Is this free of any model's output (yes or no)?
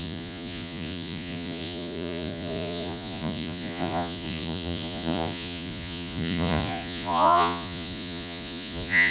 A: no